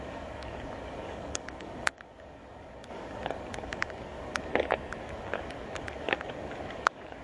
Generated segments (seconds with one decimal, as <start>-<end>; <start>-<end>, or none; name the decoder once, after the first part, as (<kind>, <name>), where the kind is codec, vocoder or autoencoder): 0.0-4.5 (codec, DAC); 5.0-7.2

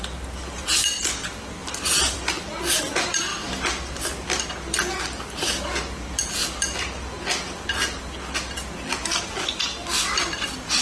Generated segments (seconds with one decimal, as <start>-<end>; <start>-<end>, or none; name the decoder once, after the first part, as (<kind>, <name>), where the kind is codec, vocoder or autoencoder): 1.6-2.3 (vocoder, BigVGAN v2)

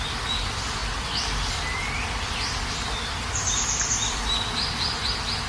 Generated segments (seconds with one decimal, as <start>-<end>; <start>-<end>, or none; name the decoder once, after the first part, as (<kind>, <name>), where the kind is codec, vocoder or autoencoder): none

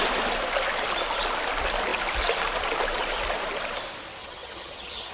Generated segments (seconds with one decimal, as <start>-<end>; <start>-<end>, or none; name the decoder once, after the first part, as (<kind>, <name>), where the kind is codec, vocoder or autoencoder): 4.2-5.1 (vocoder, HiFi-GAN)

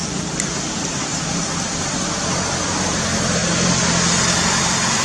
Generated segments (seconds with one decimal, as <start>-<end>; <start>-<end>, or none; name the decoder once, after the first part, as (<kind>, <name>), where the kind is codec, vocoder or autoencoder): 0.0-0.7 (vocoder, BigVGAN v2); 1.1-1.6